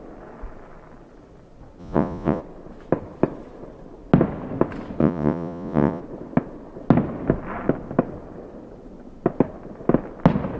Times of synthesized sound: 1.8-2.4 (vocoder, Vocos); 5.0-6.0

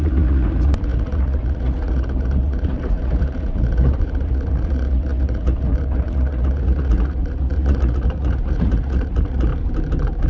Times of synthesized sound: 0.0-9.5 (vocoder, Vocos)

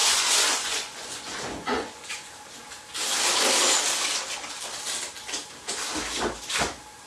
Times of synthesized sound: 0.0-2.3 (vocoder, Vocos)

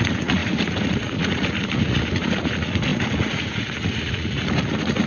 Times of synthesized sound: 0.0-5.1 (vocoder, Vocos)

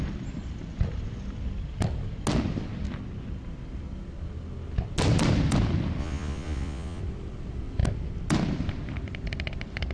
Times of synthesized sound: 6.0-7.0 (vocoder, Vocos)

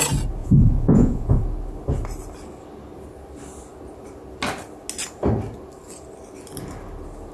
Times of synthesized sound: 0.4-1.4 (vocoder, Vocos)

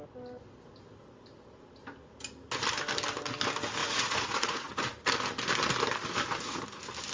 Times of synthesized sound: 3.8-4.7 (vocoder, Vocos)

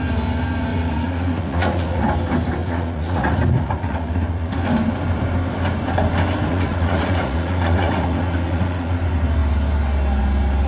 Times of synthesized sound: 0.7-2.0 (vocoder, Vocos); 2.6-4.5; 6.5-9.0